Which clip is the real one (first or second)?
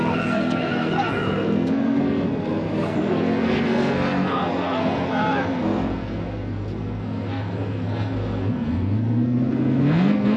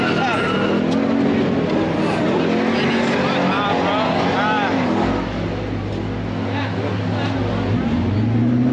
second